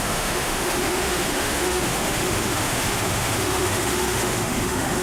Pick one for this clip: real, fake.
fake